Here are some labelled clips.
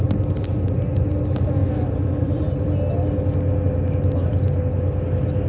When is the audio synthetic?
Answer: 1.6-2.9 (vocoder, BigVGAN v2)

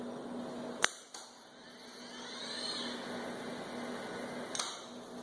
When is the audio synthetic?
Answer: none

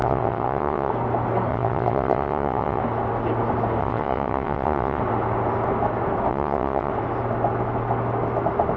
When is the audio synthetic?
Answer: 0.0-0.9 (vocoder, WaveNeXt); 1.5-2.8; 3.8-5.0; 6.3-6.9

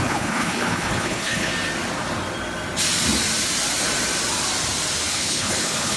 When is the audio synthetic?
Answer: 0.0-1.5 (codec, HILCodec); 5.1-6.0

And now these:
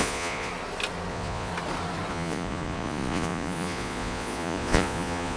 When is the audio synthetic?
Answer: 0.0-0.5 (vocoder, Vocos); 1.1-1.5; 2.1-5.4

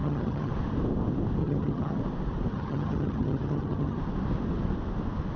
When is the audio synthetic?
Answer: 0.0-0.5 (vocoder, HiFi-GAN); 1.4-2.0; 2.5-4.0

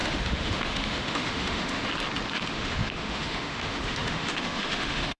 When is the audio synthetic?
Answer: 0.0-1.9 (autoencoder, DAC-VAE); 2.5-5.2